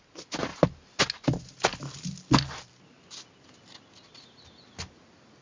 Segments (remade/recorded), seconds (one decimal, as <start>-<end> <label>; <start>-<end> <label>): 0.0-5.4 recorded